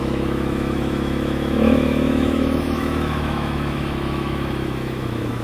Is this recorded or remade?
remade